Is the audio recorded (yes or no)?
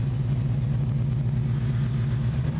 yes